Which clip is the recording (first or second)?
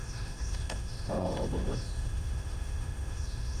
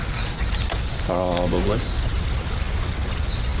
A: second